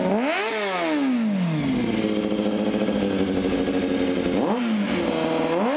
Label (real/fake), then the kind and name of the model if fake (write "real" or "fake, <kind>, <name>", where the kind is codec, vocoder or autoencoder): real